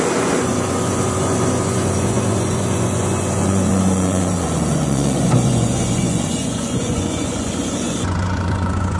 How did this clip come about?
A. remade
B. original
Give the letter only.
A